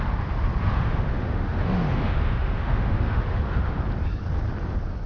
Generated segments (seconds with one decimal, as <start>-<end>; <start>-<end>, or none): 0.7-3.8